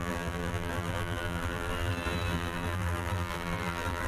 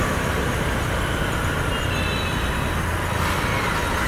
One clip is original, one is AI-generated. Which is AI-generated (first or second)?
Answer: first